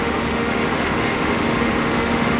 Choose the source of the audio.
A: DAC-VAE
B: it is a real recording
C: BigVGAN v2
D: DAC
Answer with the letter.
A